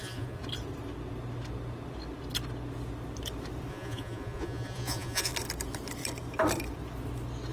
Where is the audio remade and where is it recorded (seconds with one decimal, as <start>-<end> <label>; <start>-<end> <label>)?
0.0-0.4 remade; 0.4-3.7 recorded; 3.7-5.3 remade; 5.3-7.5 recorded